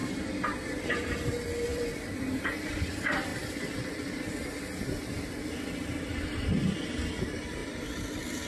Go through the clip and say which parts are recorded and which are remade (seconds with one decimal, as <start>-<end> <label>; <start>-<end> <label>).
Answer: 0.0-1.1 remade; 1.1-1.7 recorded; 1.7-2.2 remade; 2.2-7.6 recorded; 7.6-8.5 remade